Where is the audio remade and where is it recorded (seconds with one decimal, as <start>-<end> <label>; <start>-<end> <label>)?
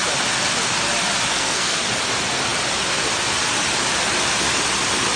0.0-1.3 recorded; 1.3-1.8 remade; 1.8-5.2 recorded